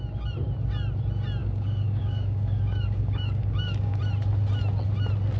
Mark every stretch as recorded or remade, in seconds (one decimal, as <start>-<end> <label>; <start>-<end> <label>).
0.0-1.4 recorded; 1.4-4.0 remade; 4.0-5.4 recorded